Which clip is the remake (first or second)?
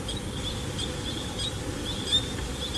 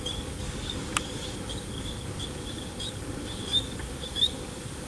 second